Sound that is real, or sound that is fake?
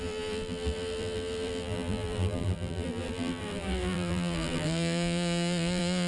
fake